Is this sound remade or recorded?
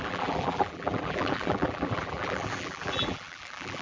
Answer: remade